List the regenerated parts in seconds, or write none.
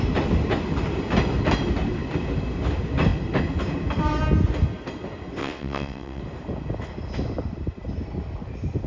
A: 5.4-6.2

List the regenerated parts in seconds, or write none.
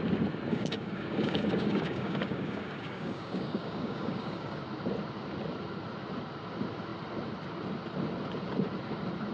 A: 0.5-4.6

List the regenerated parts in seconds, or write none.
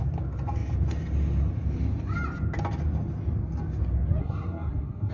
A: 4.2-5.1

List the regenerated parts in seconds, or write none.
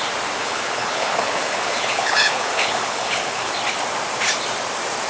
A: 0.4-3.5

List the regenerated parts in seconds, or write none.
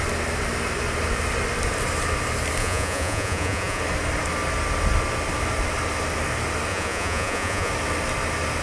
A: 2.6-3.8; 6.7-7.7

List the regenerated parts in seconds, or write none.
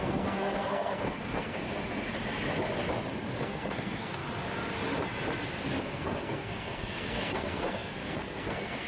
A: 0.0-1.6; 3.4-4.2; 5.8-8.9